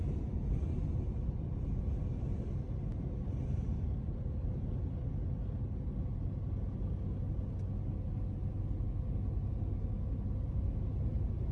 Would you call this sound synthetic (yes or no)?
no